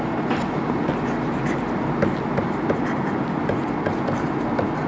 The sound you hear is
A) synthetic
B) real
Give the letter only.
B